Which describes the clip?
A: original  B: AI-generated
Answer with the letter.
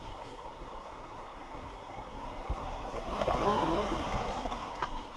B